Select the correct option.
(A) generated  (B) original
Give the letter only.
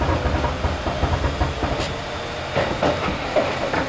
B